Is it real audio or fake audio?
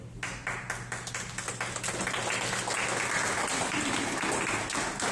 real